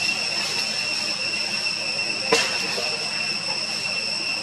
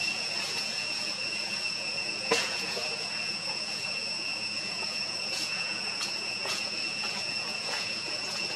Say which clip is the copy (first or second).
second